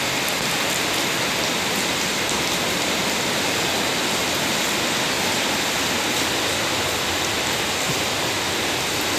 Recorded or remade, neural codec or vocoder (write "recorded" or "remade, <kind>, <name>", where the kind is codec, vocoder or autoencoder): recorded